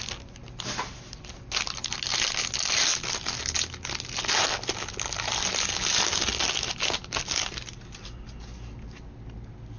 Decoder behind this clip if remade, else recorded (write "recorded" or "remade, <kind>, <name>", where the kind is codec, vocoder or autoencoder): recorded